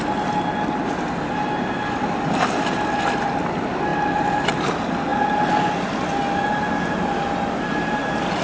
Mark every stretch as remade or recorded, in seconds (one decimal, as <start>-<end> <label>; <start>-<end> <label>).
0.0-8.4 recorded